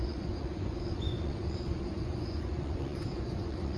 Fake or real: fake